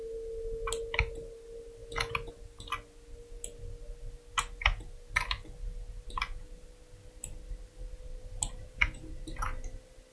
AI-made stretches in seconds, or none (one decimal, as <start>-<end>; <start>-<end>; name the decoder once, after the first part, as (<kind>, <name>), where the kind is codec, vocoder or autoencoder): none